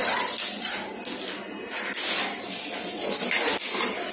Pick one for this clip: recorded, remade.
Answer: recorded